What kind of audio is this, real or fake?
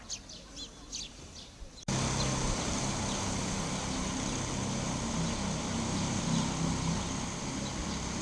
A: real